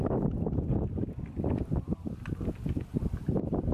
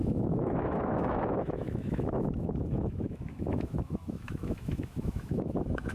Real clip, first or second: first